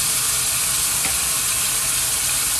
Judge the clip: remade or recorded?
recorded